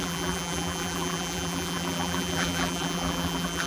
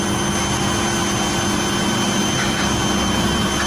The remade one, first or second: first